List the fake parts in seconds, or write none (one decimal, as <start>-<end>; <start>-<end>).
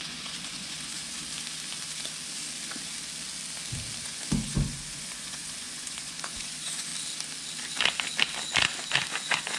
0.0-1.0; 4.0-6.9